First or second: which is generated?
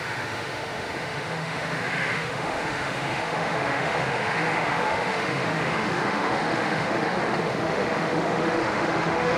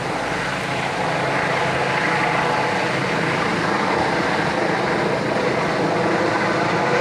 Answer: first